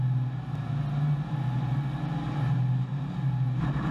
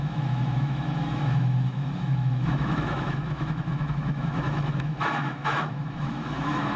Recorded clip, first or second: first